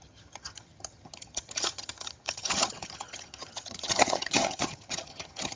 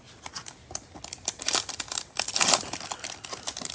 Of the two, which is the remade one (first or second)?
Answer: first